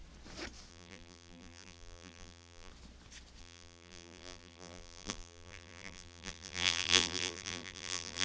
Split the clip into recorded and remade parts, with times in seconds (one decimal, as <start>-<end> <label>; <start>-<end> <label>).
0.0-0.7 recorded; 0.7-2.7 remade; 2.7-3.4 recorded; 3.4-8.2 remade